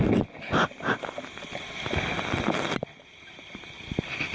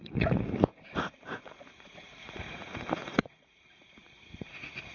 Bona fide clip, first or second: first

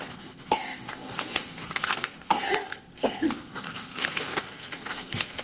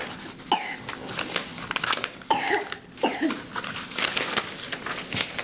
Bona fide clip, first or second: second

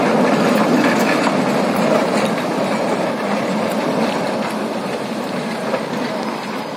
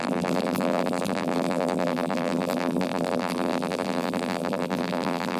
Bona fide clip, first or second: first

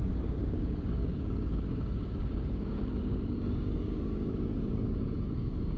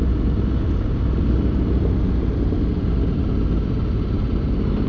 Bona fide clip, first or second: second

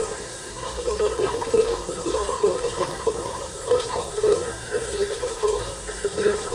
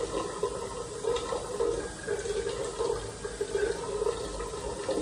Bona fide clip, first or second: second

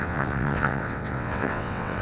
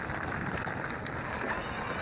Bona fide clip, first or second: second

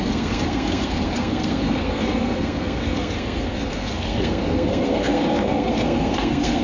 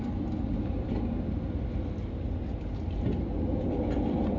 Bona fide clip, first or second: second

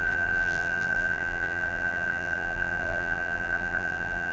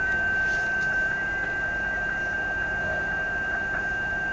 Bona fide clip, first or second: second